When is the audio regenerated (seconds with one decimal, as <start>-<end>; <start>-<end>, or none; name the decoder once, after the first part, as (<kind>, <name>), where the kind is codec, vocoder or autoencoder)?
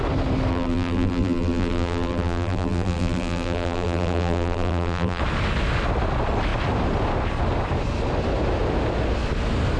0.5-5.2 (vocoder, BigVGAN v2)